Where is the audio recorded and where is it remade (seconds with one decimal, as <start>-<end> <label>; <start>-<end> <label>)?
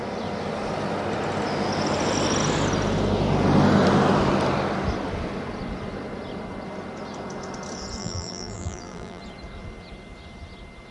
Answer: 0.0-8.0 recorded; 8.0-9.2 remade; 9.2-10.9 recorded